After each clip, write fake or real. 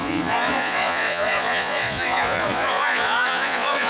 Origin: fake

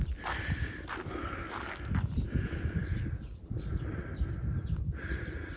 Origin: real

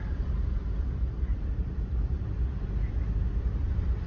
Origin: real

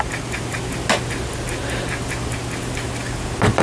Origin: real